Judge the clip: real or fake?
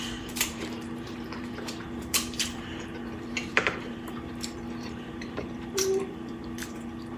fake